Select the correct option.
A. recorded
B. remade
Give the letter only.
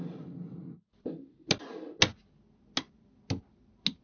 A